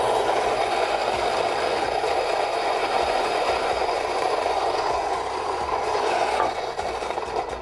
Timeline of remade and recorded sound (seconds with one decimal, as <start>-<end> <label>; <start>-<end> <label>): 0.0-1.0 remade; 1.0-1.7 recorded; 1.7-7.6 remade